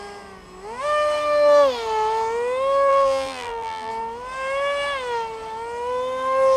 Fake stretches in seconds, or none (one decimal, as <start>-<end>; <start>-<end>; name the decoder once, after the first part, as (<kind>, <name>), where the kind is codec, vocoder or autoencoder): 2.9-3.9 (vocoder, BigVGAN v2)